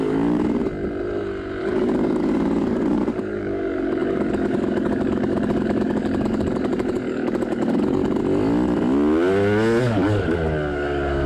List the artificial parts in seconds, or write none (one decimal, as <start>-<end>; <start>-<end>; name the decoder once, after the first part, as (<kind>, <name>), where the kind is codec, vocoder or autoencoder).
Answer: 0.0-0.6 (codec, DAC); 1.6-8.2; 9.8-11.3